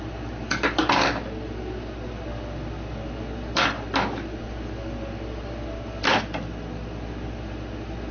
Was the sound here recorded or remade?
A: recorded